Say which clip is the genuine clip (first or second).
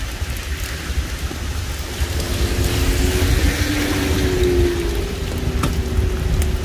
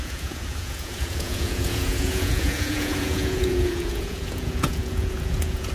first